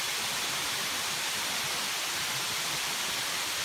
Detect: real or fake real